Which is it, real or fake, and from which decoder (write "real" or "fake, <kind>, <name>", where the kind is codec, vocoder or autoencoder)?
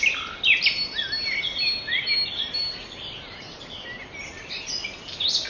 real